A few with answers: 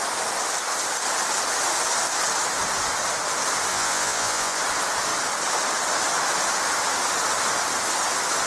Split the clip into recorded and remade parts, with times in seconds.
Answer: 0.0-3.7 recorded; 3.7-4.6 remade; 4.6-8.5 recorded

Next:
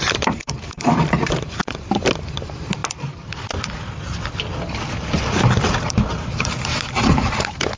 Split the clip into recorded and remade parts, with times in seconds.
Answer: 0.0-2.8 remade; 2.8-5.9 recorded; 5.9-7.8 remade

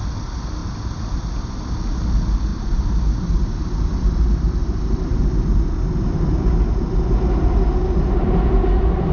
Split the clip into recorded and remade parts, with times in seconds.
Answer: 0.0-0.6 recorded; 0.6-1.6 remade; 1.6-2.5 recorded; 2.5-5.3 remade; 5.3-9.1 recorded

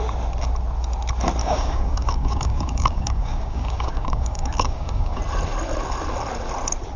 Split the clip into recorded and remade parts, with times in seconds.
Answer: 0.0-1.4 recorded; 1.4-5.2 remade; 5.2-7.0 recorded